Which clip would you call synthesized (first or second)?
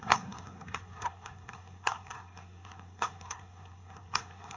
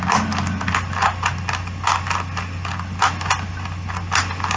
first